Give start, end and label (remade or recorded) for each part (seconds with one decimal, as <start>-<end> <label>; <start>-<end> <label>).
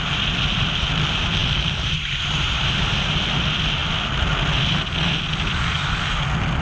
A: 0.0-6.6 recorded